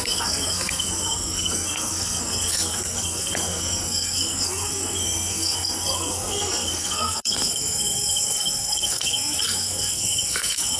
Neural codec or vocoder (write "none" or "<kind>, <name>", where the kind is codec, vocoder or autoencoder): codec, SNAC